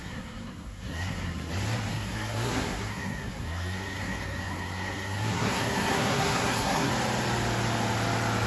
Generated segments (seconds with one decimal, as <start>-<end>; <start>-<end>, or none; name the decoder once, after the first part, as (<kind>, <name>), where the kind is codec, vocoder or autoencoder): 0.0-1.5 (codec, SNAC); 1.9-6.9